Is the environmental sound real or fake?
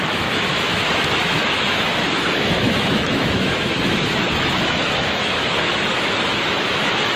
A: fake